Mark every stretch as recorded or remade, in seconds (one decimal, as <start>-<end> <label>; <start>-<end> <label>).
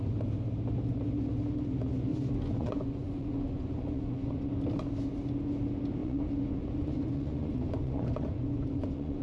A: 0.0-2.1 recorded; 2.1-4.5 remade; 4.5-6.0 recorded; 6.0-9.2 remade